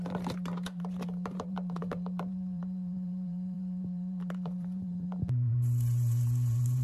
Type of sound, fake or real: fake